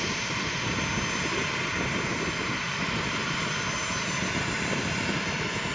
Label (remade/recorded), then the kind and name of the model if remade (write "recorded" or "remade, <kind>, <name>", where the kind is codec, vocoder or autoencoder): recorded